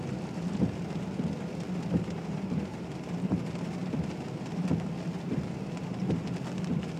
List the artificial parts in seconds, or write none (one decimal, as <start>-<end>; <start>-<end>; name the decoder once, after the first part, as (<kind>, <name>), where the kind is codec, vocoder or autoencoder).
none